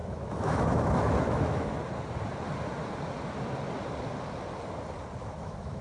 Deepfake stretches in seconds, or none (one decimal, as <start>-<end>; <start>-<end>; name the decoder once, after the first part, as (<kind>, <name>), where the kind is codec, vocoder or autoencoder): 0.0-1.8 (autoencoder, DAC-VAE); 5.3-5.8